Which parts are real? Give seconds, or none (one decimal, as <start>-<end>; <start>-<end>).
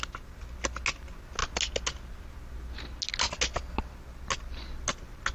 0.0-5.3